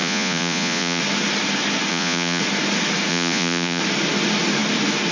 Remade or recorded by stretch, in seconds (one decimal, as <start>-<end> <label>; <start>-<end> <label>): 0.0-1.0 remade; 1.0-1.9 recorded; 1.9-2.4 remade; 2.4-3.1 recorded; 3.1-3.8 remade; 3.8-5.1 recorded